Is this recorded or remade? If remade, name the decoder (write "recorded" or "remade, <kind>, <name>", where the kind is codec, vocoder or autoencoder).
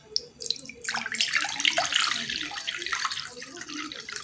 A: recorded